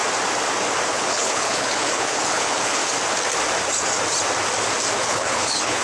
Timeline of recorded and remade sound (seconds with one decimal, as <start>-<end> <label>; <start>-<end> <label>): 0.0-0.9 recorded; 0.9-2.8 remade; 2.8-5.0 recorded; 5.0-5.8 remade